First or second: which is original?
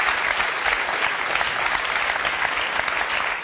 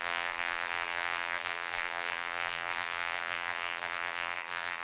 first